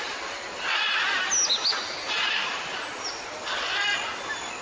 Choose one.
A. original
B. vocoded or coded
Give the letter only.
A